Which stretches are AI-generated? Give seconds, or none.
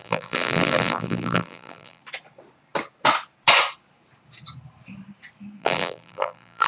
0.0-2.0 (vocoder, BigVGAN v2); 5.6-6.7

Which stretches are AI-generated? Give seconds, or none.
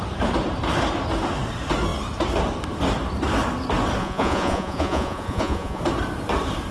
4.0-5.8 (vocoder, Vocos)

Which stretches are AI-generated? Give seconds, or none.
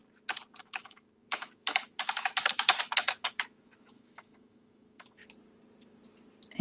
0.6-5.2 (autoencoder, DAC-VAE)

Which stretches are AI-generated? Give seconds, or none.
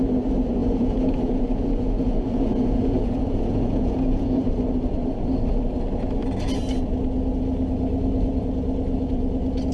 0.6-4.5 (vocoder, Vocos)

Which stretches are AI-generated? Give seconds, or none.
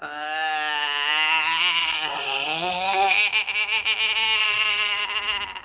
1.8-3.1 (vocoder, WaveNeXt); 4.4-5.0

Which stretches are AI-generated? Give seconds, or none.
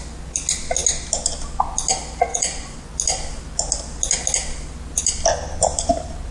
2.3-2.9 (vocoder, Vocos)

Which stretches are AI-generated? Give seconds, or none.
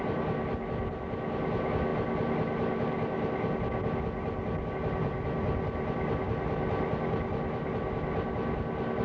none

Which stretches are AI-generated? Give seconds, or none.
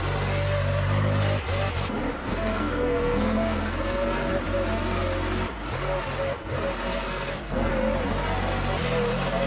2.2-4.3 (codec, SNAC); 6.9-7.7